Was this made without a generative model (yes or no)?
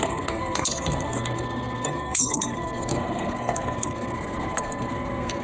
no